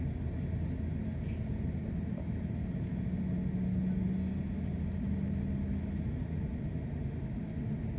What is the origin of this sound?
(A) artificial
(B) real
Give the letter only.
B